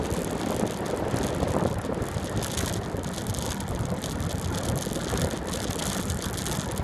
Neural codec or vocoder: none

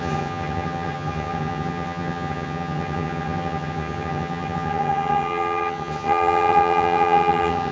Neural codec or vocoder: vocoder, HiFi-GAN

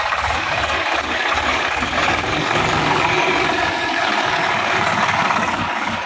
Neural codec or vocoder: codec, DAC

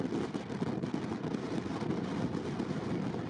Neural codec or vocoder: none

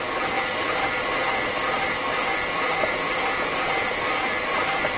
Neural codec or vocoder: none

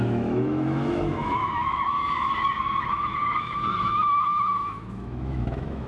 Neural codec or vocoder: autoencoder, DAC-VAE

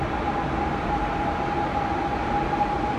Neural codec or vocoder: none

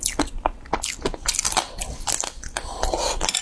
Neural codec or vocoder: none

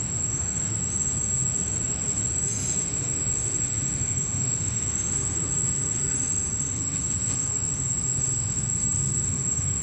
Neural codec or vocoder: autoencoder, DAC-VAE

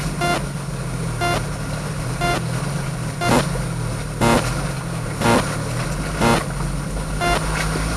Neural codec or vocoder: none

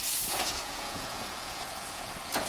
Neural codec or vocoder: vocoder, Vocos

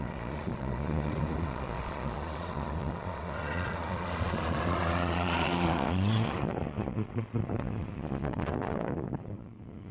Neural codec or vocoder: vocoder, Vocos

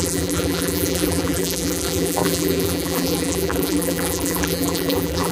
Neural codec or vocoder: vocoder, BigVGAN v2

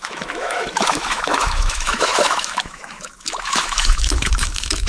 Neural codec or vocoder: autoencoder, DAC-VAE